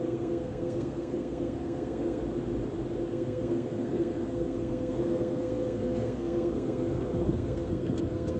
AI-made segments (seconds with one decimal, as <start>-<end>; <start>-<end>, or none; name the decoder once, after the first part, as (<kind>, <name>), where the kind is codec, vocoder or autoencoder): 0.0-2.2 (codec, SNAC); 3.1-8.4